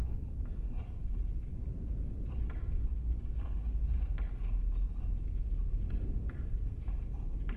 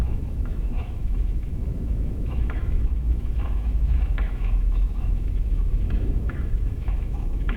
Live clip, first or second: first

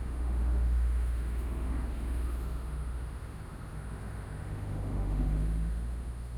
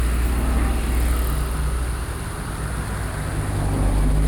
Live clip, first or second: second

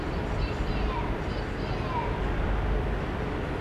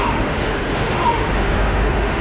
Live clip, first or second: first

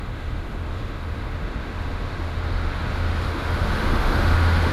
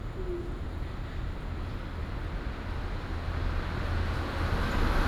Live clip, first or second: second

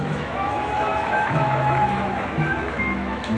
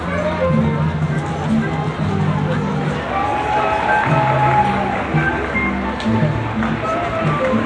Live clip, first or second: second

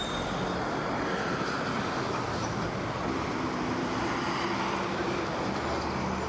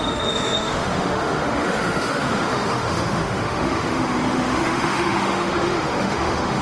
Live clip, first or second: first